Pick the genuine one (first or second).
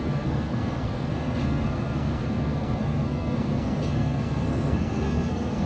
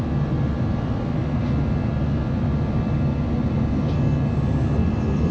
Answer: second